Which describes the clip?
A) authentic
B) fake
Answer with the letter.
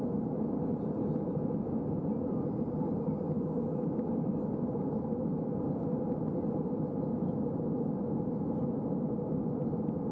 A